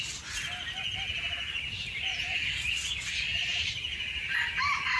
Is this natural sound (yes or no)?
yes